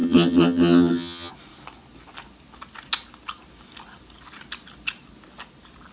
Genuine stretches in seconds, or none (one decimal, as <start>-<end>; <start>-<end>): 1.3-5.9